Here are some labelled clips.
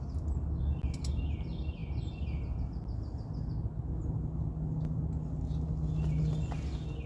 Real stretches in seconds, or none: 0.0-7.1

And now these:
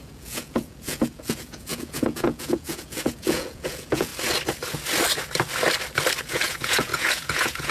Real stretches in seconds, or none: 4.1-6.2

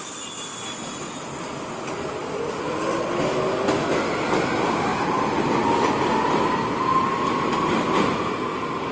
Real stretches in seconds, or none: 0.0-8.9

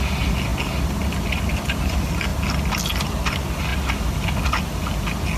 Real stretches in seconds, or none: 0.0-5.4

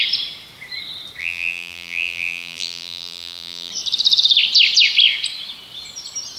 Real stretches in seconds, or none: 0.0-1.2; 3.7-6.4